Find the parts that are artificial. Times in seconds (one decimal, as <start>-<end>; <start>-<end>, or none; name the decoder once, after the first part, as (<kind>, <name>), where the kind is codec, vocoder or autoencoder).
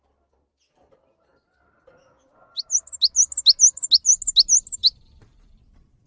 4.8-5.5 (vocoder, BigVGAN v2)